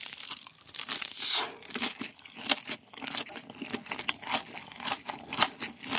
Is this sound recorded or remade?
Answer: recorded